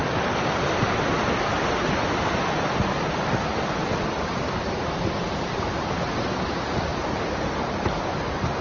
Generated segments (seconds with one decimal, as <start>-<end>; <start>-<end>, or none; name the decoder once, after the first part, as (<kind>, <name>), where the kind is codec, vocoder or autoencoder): none